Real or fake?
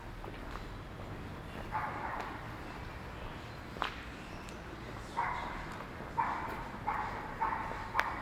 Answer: real